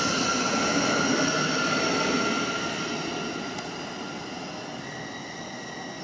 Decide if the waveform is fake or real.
real